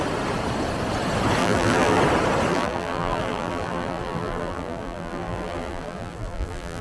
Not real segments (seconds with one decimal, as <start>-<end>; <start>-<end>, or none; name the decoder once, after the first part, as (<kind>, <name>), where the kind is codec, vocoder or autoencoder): 1.4-2.0 (vocoder, BigVGAN v2); 2.5-6.8